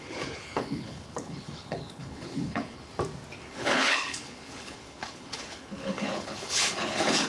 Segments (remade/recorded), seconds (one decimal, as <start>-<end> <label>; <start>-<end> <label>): 0.0-2.9 remade; 2.9-3.5 recorded; 3.5-7.3 remade